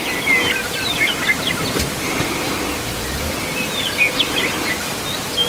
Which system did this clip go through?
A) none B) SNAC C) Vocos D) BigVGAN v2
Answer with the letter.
D